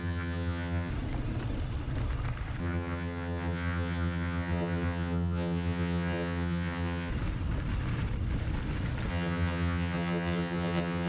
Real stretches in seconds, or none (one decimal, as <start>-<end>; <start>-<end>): 0.9-2.6; 7.1-9.1

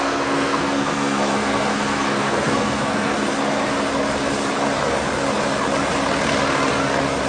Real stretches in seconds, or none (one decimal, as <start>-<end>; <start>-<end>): 3.1-7.3

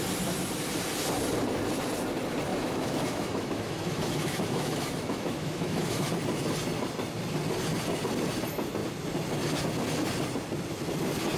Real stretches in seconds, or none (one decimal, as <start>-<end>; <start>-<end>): 0.0-2.5; 6.1-11.4

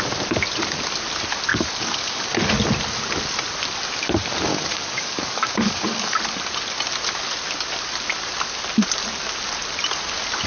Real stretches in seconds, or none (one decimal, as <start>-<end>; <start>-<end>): 0.0-1.5; 2.3-4.5; 6.2-10.5

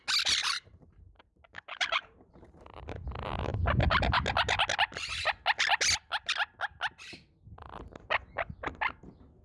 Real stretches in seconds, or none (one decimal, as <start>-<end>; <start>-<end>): 0.0-0.4; 2.8-9.4

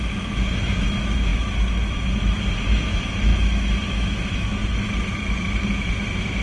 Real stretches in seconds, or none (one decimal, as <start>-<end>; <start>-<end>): none